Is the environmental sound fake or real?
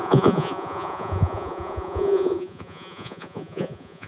fake